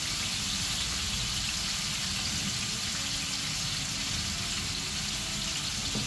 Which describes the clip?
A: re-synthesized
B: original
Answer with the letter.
B